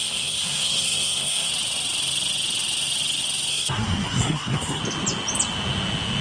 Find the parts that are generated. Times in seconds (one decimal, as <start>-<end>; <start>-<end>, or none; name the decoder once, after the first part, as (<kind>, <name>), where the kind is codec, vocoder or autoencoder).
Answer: 0.0-1.5 (codec, SNAC); 3.5-4.8

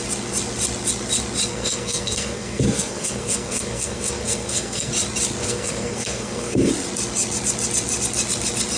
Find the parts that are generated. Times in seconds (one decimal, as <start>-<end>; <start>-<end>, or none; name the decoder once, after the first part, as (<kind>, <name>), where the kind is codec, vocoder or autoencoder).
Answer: 1.5-4.9 (codec, SNAC); 5.4-6.7

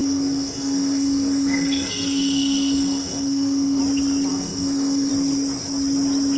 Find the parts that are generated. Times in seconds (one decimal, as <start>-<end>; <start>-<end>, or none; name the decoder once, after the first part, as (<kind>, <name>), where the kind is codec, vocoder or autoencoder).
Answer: 0.0-3.8 (codec, SNAC); 4.3-5.1

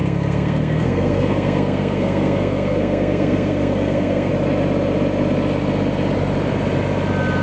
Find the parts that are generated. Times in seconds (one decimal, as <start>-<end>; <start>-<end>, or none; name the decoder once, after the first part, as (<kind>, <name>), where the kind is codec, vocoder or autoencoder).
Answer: 0.0-4.3 (codec, SNAC)